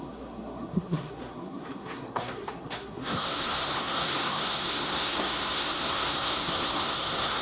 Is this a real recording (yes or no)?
no